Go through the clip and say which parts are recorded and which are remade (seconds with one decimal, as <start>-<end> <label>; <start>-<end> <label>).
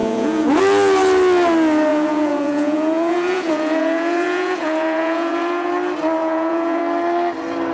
0.0-0.6 remade; 0.6-1.9 recorded; 1.9-5.7 remade; 5.7-6.2 recorded; 6.2-6.8 remade; 6.8-7.7 recorded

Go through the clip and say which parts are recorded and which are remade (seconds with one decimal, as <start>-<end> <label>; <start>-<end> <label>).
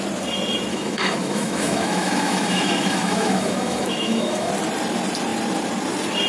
0.0-0.7 recorded; 0.7-4.5 remade; 4.5-6.3 recorded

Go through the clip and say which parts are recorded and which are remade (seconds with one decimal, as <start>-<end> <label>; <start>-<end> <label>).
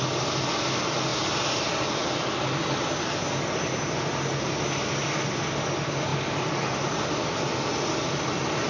0.0-8.7 recorded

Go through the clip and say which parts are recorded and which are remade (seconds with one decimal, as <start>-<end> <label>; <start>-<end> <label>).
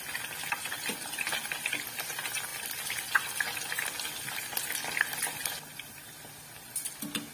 0.0-7.3 recorded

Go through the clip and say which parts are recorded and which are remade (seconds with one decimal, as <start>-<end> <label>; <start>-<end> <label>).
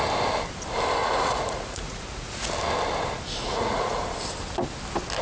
0.0-1.0 recorded; 1.0-2.5 remade; 2.5-3.4 recorded; 3.4-4.0 remade; 4.0-5.2 recorded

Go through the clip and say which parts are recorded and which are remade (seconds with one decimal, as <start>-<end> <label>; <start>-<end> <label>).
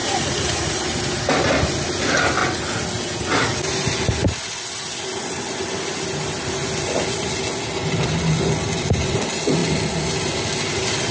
0.0-0.8 remade; 0.8-11.1 recorded